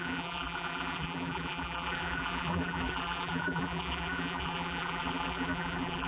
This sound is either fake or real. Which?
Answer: fake